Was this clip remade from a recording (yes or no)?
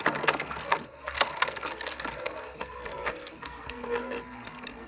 yes